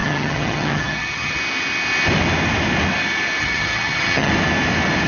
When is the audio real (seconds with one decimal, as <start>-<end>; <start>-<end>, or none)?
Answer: 1.4-3.4; 4.3-5.1